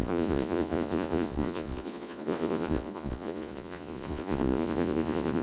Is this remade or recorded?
remade